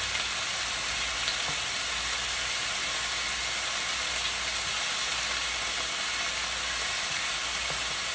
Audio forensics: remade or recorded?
recorded